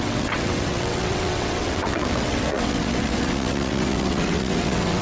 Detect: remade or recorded remade